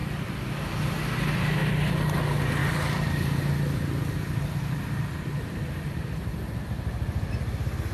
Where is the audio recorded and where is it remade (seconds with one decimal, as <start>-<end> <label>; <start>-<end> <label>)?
0.0-0.6 remade; 0.6-1.6 recorded; 1.6-2.2 remade; 2.2-2.6 recorded; 2.6-7.3 remade; 7.3-7.9 recorded